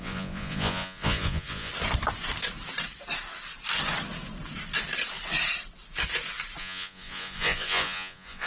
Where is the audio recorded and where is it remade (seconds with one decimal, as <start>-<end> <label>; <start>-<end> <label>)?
0.0-1.7 remade; 1.7-6.6 recorded; 6.6-8.5 remade